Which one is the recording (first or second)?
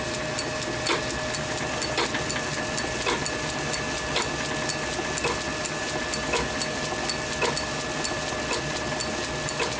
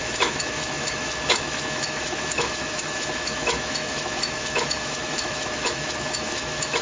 first